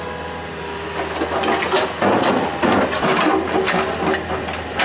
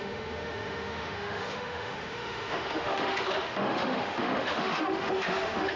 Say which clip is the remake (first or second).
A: second